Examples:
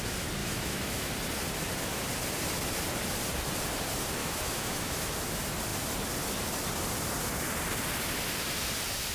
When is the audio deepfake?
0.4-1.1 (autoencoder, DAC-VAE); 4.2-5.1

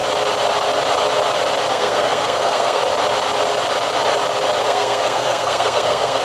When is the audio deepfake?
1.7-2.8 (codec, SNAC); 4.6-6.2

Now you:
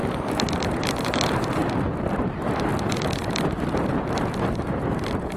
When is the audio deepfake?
0.0-1.6 (vocoder, BigVGAN v2); 2.1-2.7; 4.4-5.4

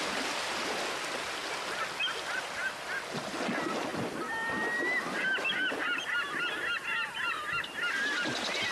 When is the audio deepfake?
none

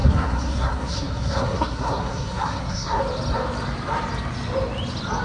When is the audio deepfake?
0.0-3.0 (codec, SNAC)

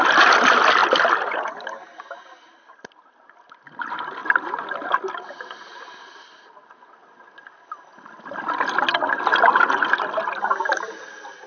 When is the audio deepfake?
none